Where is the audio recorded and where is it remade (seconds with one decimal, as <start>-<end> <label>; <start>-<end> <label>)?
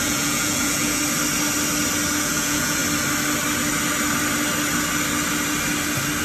0.0-1.0 remade; 1.0-2.2 recorded; 2.2-2.8 remade; 2.8-6.2 recorded